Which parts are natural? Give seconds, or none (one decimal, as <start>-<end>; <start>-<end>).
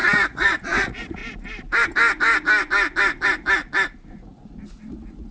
1.2-4.3